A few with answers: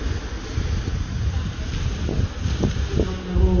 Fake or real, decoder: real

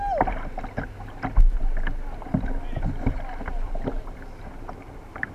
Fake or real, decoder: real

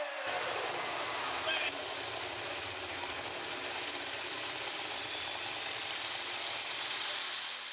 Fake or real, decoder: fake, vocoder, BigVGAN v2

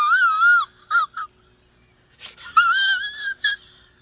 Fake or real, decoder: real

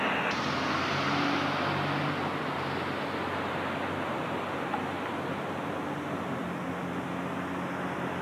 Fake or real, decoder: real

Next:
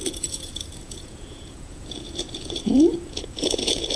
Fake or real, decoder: fake, vocoder, Vocos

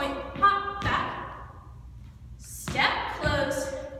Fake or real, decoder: real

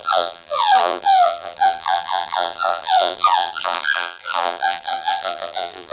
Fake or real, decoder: fake, vocoder, BigVGAN v2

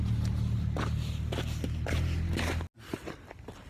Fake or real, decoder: real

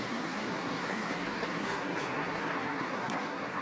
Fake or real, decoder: fake, codec, SNAC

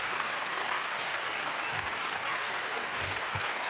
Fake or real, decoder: fake, codec, DAC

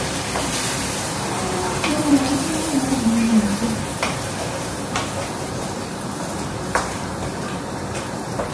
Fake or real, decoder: fake, vocoder, BigVGAN v2